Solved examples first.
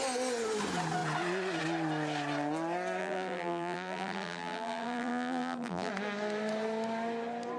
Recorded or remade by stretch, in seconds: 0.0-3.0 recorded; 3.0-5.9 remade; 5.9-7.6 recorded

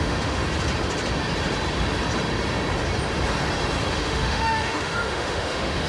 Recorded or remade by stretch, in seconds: 0.0-0.4 remade; 0.4-3.9 recorded; 3.9-5.9 remade